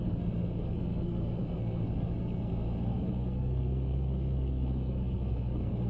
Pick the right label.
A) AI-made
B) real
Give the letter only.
A